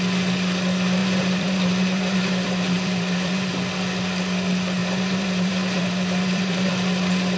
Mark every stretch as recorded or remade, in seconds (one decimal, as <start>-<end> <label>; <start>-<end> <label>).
0.0-1.0 recorded; 1.0-3.5 remade; 3.5-4.8 recorded; 4.8-6.7 remade; 6.7-7.4 recorded